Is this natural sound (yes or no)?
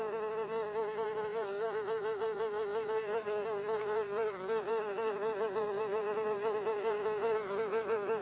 no